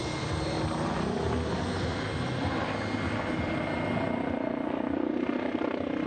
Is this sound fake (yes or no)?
no